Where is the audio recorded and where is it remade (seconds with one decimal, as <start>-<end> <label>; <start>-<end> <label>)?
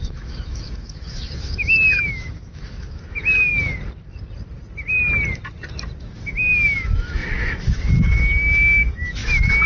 0.0-3.5 remade; 3.5-6.0 recorded; 6.0-9.7 remade